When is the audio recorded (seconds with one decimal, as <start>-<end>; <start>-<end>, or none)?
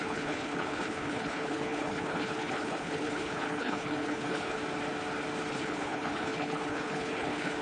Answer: 4.6-5.5